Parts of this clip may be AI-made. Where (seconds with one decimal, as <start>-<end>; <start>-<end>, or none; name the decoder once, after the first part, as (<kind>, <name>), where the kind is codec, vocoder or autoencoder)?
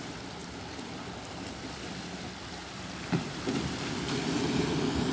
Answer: 0.4-0.9 (vocoder, BigVGAN v2); 2.6-4.2